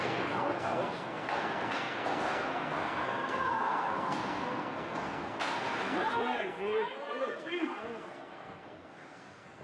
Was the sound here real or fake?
fake